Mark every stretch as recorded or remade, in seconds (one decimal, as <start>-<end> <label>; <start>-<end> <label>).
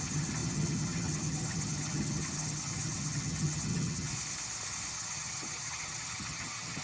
0.0-4.1 remade; 4.1-4.9 recorded; 4.9-6.8 remade